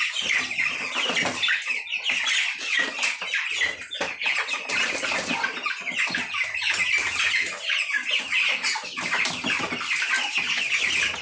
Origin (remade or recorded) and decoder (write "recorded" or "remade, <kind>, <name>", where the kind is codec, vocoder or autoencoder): recorded